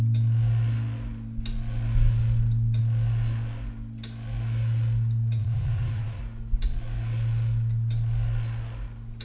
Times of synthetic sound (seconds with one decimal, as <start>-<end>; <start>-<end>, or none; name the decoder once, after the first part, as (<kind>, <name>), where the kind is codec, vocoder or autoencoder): 5.4-6.2 (vocoder, Vocos)